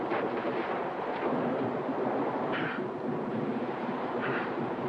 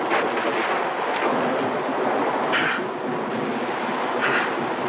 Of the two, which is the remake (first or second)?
first